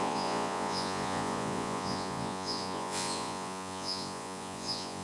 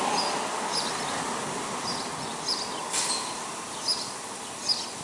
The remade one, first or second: first